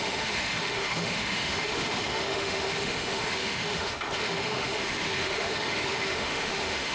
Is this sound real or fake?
fake